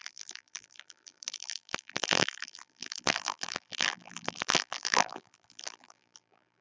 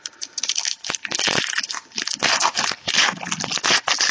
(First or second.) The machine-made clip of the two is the first